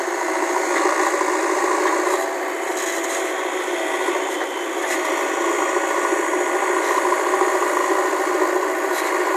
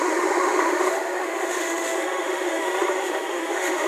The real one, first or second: first